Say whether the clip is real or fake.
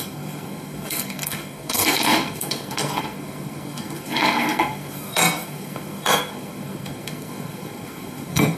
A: fake